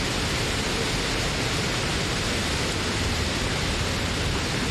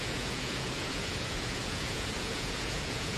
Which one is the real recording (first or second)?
first